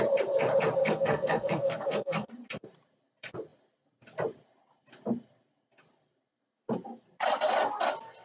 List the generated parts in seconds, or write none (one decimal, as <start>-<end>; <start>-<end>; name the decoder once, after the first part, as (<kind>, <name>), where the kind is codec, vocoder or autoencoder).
0.8-2.3 (codec, SNAC)